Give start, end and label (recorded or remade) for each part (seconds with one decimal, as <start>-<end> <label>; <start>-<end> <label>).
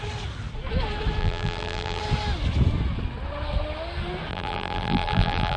0.0-1.2 recorded; 1.2-2.0 remade; 2.0-4.3 recorded; 4.3-5.6 remade